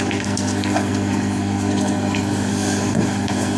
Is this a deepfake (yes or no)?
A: yes